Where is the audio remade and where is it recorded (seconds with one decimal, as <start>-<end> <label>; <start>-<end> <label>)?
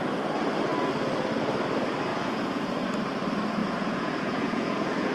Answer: 0.0-2.1 recorded; 2.1-2.7 remade; 2.7-3.6 recorded; 3.6-5.1 remade